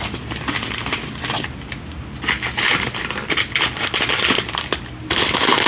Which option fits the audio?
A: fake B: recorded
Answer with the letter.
B